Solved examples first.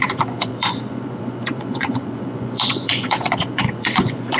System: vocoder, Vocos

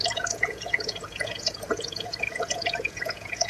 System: vocoder, Vocos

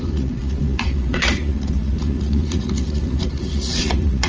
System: vocoder, Vocos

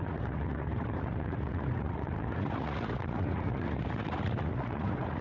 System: vocoder, Vocos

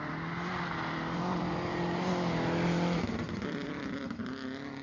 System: none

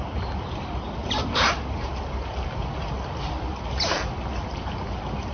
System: none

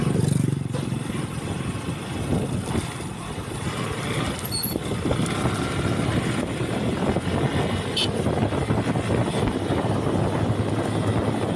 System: none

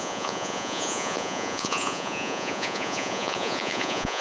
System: vocoder, Vocos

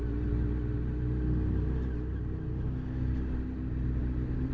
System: none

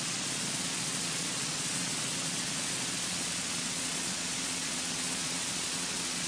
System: vocoder, Vocos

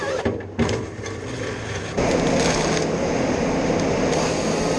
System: none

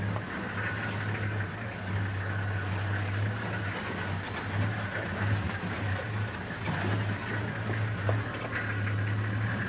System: none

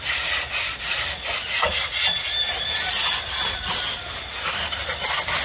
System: none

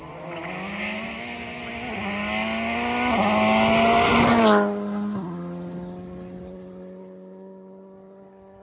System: none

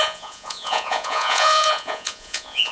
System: vocoder, Vocos